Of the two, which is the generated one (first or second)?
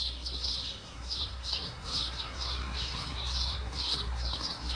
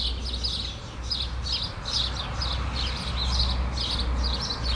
first